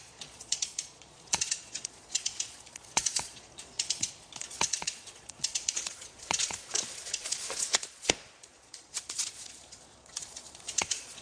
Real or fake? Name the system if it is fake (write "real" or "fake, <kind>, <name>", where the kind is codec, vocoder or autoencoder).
fake, vocoder, Vocos